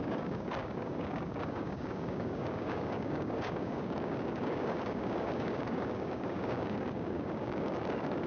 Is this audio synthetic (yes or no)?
yes